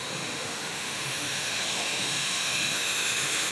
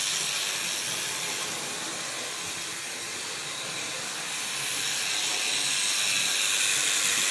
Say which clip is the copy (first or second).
first